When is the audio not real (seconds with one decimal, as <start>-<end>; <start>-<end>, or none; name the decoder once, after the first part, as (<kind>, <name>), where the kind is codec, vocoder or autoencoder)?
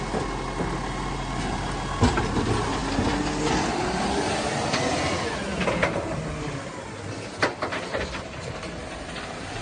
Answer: none